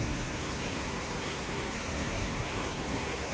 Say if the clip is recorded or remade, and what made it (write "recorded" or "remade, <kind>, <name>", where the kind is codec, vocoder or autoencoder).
remade, codec, SNAC